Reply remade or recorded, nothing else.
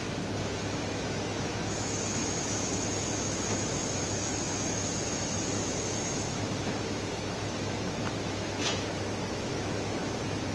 remade